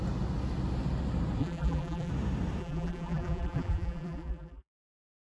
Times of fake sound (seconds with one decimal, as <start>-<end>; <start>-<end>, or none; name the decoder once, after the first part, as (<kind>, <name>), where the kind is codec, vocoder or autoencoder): 1.4-2.1 (vocoder, BigVGAN v2); 2.6-4.7